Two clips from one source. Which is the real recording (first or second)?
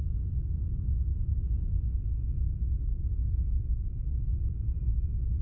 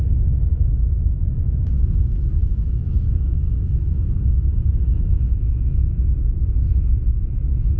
first